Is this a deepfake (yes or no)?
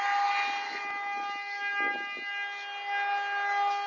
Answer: no